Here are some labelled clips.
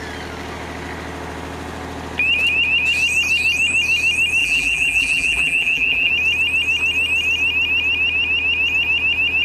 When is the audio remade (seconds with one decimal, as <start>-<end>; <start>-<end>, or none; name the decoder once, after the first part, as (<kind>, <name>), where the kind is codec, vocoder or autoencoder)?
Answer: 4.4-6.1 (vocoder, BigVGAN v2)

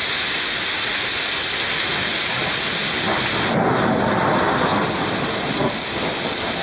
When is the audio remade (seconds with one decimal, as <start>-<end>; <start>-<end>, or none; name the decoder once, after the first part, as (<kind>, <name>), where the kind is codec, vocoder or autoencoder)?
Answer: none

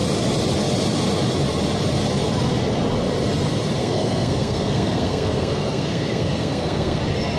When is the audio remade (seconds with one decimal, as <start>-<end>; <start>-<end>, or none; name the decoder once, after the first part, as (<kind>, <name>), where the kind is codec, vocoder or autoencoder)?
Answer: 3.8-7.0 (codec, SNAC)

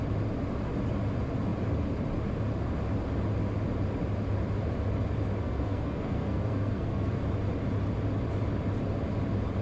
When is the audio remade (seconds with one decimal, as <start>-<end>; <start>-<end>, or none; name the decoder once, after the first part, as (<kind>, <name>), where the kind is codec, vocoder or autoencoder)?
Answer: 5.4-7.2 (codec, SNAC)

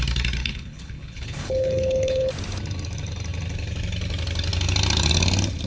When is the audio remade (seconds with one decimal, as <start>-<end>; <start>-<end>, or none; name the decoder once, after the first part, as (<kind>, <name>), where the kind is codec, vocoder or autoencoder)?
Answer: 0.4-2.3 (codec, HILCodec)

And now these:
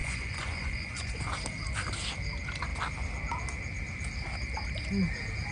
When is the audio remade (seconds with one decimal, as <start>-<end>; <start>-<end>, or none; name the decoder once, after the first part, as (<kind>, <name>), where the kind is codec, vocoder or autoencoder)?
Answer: 0.0-1.2 (vocoder, Vocos)

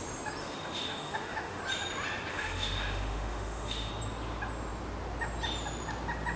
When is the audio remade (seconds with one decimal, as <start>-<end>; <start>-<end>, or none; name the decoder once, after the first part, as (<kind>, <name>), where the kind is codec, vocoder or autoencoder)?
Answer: 0.4-1.6 (autoencoder, DAC-VAE); 2.3-3.9